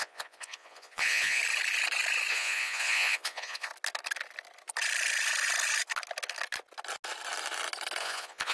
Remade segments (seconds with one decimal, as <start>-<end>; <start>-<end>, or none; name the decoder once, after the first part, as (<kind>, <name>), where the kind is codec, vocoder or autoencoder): 0.0-1.4 (vocoder, Vocos); 2.3-3.7; 8.0-8.5